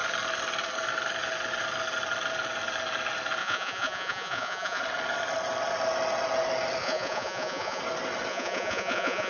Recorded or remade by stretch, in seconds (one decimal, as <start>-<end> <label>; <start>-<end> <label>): 0.0-3.4 recorded; 3.4-4.8 remade; 4.8-6.8 recorded; 6.8-7.8 remade; 7.8-8.3 recorded; 8.3-9.3 remade